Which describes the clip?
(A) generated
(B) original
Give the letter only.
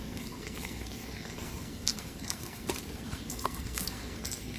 A